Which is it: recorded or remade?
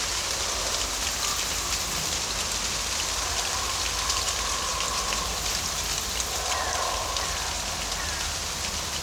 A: recorded